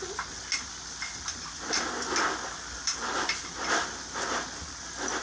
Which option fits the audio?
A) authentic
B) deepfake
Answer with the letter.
A